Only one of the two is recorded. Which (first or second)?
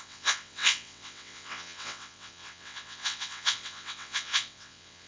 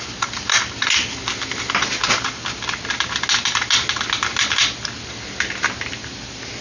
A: second